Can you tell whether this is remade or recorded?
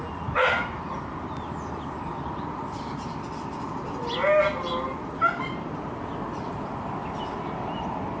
recorded